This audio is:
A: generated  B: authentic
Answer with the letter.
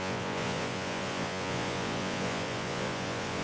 A